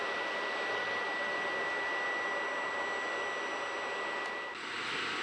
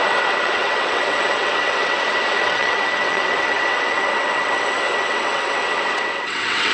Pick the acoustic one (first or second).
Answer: first